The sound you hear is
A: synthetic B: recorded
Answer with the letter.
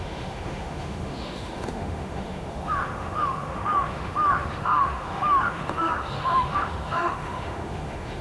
A